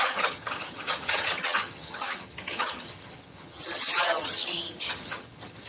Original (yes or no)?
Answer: no